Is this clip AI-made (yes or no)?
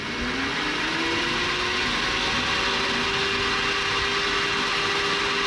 no